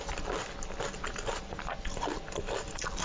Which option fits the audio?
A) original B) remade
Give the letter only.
A